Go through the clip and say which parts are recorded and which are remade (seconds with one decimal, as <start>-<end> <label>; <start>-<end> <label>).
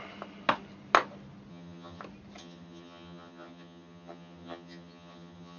0.0-1.5 recorded; 1.5-2.0 remade; 2.0-2.4 recorded; 2.4-5.6 remade